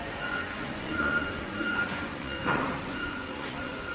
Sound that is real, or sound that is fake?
fake